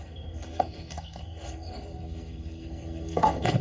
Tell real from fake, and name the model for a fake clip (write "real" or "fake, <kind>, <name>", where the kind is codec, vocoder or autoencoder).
fake, codec, SNAC